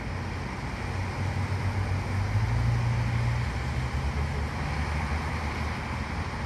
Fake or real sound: real